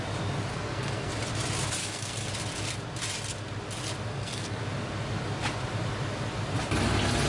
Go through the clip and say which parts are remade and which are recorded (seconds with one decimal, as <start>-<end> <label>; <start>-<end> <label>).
0.0-0.5 recorded; 0.5-1.1 remade; 1.1-1.8 recorded; 1.8-2.3 remade; 2.3-4.1 recorded; 4.1-4.6 remade; 4.6-7.3 recorded